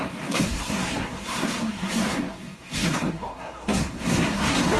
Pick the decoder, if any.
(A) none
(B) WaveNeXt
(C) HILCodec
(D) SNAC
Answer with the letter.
D